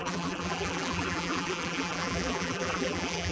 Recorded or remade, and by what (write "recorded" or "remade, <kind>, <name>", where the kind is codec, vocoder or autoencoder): remade, vocoder, BigVGAN v2